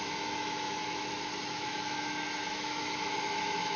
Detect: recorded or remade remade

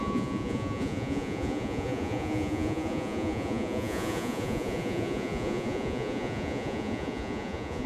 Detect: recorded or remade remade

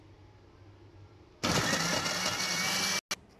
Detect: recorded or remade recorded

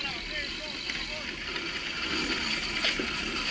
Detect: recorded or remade recorded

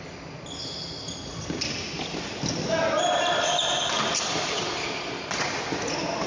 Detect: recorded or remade recorded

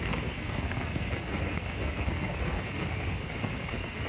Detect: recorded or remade remade